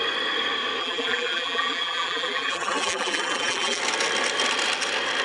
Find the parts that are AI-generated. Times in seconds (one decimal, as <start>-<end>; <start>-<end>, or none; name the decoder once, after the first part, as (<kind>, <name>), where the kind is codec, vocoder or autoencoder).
0.8-3.8 (vocoder, BigVGAN v2)